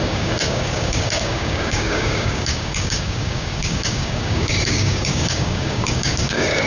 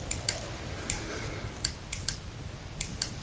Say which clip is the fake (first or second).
first